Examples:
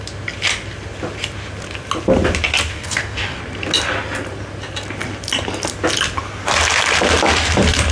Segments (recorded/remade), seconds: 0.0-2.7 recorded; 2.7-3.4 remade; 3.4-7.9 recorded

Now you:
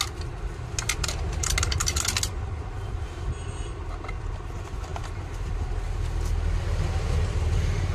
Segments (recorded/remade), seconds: 0.0-7.9 recorded

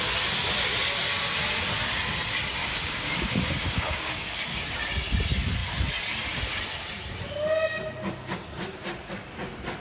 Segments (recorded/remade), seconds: 0.0-2.6 recorded; 2.6-4.8 remade; 4.8-9.8 recorded

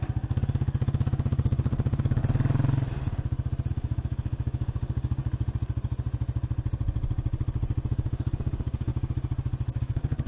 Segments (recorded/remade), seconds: 0.0-2.2 remade; 2.2-3.7 recorded; 3.7-5.2 remade; 5.2-7.9 recorded; 7.9-8.9 remade; 8.9-9.8 recorded; 9.8-10.3 remade

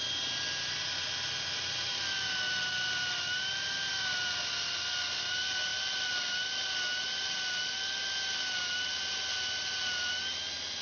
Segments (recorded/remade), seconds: 0.0-10.8 recorded